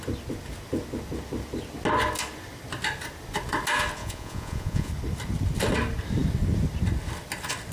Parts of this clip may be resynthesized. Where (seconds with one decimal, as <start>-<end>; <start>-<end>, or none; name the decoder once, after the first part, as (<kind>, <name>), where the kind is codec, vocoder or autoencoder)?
4.0-4.9 (vocoder, Vocos)